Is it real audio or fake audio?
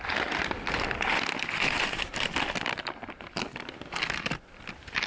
real